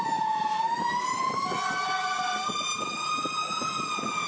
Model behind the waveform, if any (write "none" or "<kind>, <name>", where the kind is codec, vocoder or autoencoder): none